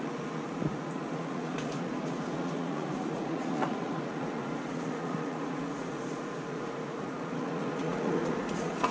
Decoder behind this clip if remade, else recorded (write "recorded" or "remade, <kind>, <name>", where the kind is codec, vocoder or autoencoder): remade, vocoder, Vocos